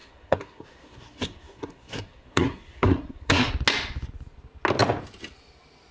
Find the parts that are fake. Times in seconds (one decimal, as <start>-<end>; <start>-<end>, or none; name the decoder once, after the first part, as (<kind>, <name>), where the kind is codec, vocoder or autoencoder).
0.0-3.5 (codec, SNAC)